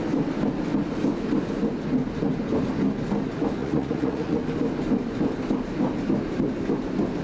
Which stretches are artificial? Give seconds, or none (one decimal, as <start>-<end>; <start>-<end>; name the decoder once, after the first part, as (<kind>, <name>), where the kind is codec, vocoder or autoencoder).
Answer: 3.6-4.4 (vocoder, Vocos)